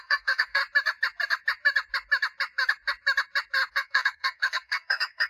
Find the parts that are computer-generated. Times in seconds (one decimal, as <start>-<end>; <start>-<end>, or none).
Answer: 0.0-0.6; 3.7-5.3